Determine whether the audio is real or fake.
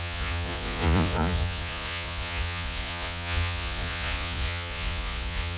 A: fake